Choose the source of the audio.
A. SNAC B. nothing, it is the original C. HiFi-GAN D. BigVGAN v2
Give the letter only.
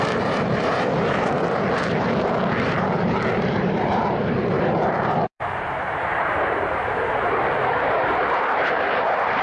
D